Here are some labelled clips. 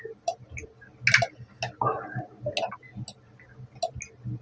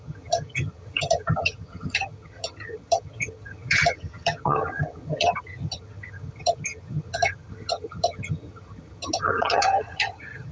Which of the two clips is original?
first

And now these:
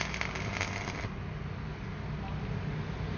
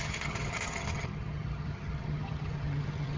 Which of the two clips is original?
first